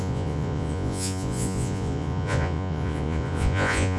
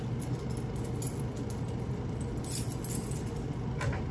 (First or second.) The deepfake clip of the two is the first